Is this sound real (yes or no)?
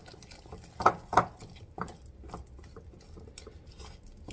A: yes